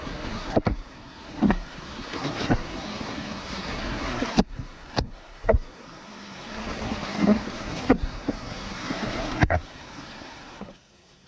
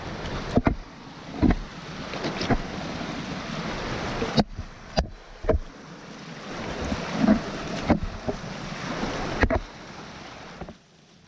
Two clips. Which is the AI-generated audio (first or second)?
first